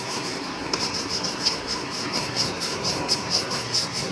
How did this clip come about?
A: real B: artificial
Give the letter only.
B